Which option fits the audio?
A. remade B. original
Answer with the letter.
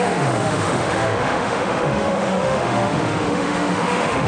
A